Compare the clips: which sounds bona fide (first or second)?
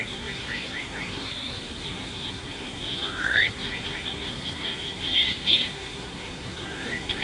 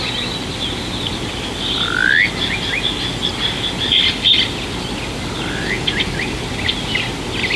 second